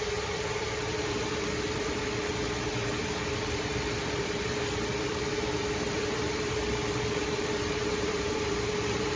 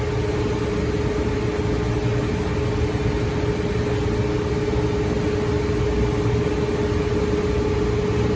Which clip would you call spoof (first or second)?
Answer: first